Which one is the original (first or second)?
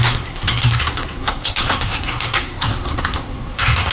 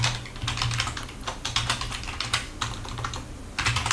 second